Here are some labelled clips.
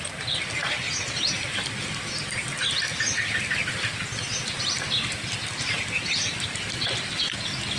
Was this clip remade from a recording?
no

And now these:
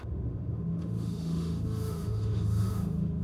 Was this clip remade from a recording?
yes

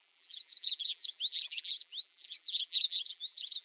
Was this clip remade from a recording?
yes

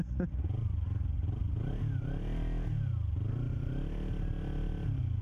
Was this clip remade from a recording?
no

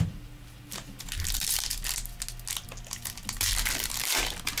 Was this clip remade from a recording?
no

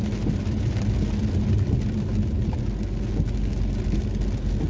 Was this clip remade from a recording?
no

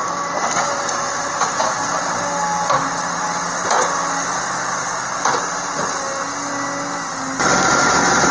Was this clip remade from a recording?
no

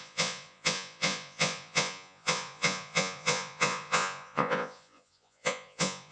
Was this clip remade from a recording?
yes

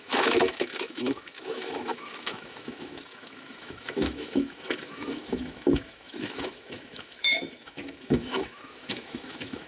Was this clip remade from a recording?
yes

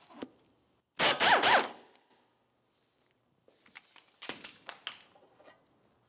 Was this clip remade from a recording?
no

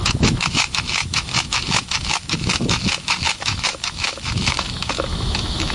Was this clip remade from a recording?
yes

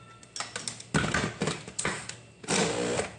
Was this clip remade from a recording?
no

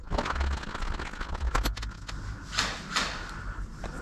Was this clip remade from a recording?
no